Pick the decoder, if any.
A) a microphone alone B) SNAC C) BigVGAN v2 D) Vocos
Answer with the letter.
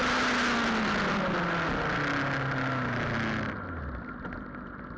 A